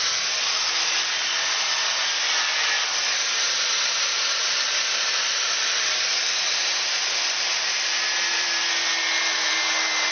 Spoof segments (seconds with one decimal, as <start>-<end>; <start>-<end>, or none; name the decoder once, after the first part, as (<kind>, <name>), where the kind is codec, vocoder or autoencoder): 3.3-7.7 (vocoder, BigVGAN v2)